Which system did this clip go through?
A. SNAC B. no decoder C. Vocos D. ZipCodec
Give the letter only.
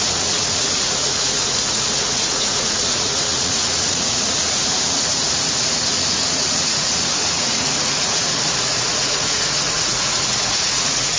C